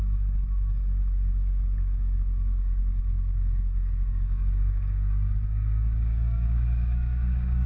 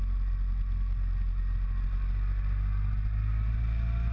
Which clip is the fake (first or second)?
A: first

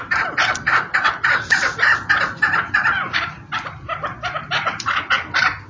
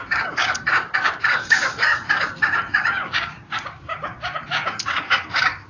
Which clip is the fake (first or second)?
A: second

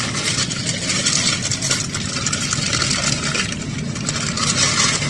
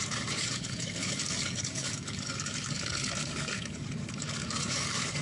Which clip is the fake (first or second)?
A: second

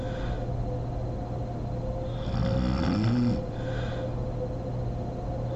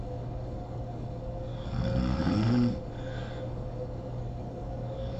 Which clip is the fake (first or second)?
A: second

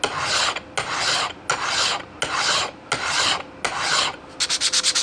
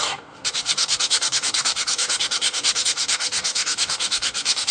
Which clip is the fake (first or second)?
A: second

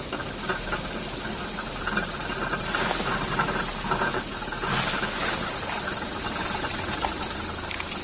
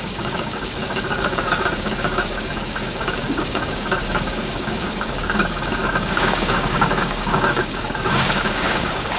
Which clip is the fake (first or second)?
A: second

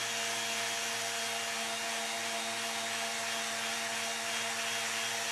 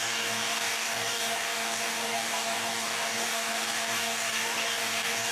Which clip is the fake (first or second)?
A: second